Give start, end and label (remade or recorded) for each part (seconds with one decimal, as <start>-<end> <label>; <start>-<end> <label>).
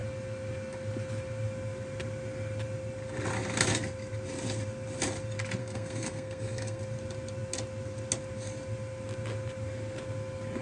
0.0-5.6 recorded; 5.6-6.8 remade; 6.8-10.6 recorded